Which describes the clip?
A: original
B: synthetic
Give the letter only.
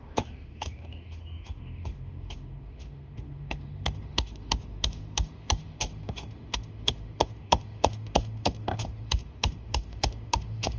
B